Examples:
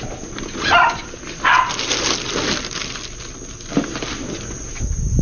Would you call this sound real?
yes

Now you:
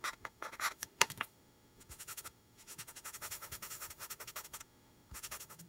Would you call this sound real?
no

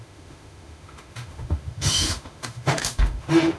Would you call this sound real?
no